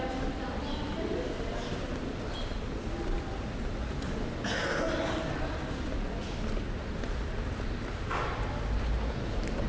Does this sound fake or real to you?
real